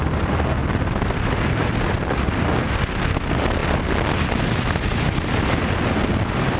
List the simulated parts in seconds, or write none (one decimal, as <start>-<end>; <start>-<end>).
none